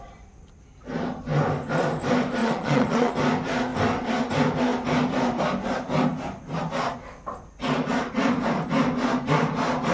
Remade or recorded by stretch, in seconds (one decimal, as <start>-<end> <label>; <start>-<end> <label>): 0.0-2.4 recorded; 2.4-3.1 remade; 3.1-9.9 recorded